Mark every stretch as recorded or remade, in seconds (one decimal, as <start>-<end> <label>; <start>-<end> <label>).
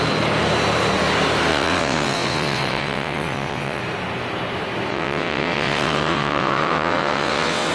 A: 0.0-1.5 recorded; 1.5-3.8 remade; 3.8-4.9 recorded; 4.9-7.7 remade